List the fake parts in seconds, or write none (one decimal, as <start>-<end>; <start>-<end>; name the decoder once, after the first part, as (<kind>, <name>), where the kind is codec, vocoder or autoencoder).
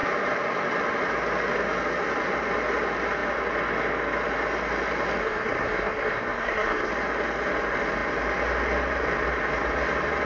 5.2-6.9 (codec, SNAC)